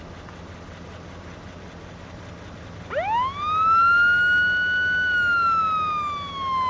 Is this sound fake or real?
real